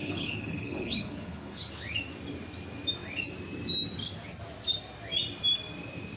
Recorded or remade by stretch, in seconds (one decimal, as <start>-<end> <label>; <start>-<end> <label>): 0.0-1.7 remade; 1.7-6.2 recorded